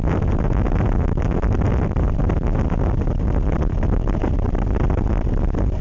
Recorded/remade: remade